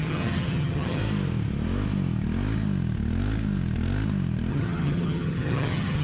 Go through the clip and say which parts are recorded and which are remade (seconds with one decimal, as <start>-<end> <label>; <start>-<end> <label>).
0.0-1.0 remade; 1.0-4.5 recorded; 4.5-6.0 remade

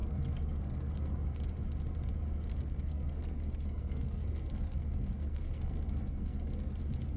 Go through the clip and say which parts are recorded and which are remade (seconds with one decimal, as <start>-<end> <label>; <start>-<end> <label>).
0.0-1.1 remade; 1.1-2.5 recorded; 2.5-6.8 remade; 6.8-7.2 recorded

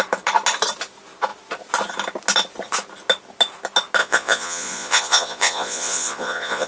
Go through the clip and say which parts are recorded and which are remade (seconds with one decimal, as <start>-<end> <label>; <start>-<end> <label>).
0.0-4.0 recorded; 4.0-6.7 remade

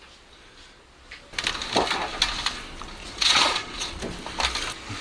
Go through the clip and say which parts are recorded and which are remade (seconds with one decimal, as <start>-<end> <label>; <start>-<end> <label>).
0.0-3.0 recorded; 3.0-4.0 remade; 4.0-5.0 recorded